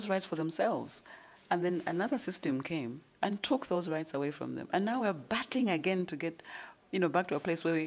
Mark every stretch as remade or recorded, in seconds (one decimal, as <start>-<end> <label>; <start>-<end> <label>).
0.0-2.5 remade; 2.5-3.3 recorded; 3.3-4.5 remade; 4.5-5.0 recorded; 5.0-6.0 remade; 6.0-7.4 recorded; 7.4-7.9 remade